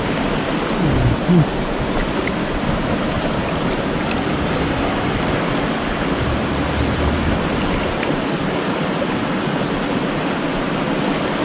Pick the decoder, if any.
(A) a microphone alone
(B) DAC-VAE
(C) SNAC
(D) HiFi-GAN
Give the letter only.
A